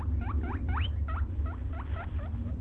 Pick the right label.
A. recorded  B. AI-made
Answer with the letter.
A